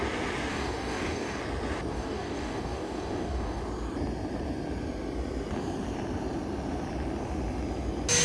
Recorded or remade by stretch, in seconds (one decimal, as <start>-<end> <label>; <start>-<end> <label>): 0.0-0.5 recorded; 0.5-1.4 remade; 1.4-1.9 recorded; 1.9-3.6 remade; 3.6-8.2 recorded